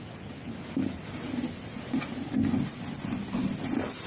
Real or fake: real